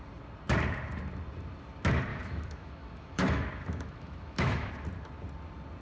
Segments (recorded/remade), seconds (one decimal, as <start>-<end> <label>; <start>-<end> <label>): 0.0-2.1 recorded; 2.1-4.7 remade; 4.7-5.8 recorded